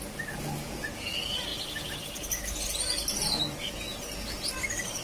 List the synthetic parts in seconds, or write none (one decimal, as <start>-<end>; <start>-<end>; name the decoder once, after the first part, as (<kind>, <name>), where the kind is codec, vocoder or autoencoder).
none